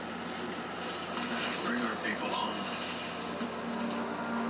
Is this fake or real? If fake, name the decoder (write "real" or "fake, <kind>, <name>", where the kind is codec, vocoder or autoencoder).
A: real